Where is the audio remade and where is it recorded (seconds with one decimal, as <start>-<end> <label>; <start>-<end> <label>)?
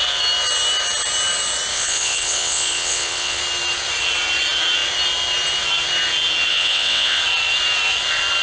0.0-1.7 recorded; 1.7-3.4 remade; 3.4-6.5 recorded; 6.5-7.2 remade; 7.2-8.4 recorded